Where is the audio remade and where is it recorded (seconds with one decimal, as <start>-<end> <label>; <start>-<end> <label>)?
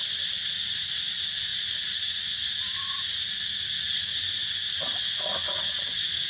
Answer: 0.0-1.5 recorded; 1.5-3.5 remade; 3.5-6.3 recorded